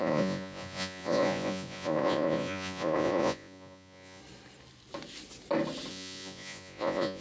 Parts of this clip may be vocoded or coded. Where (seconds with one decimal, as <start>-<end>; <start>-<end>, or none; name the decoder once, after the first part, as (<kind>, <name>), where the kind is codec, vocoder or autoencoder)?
0.0-4.2 (vocoder, Vocos); 5.9-7.2